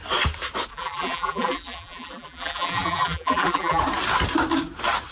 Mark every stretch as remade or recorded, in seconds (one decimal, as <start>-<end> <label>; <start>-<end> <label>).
0.0-0.7 recorded; 0.7-3.8 remade; 3.8-5.1 recorded